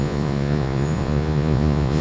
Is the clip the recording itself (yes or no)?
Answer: no